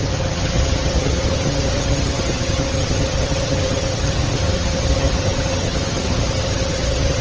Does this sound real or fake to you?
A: fake